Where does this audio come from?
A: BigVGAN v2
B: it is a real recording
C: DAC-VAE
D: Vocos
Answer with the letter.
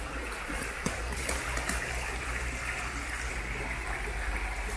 B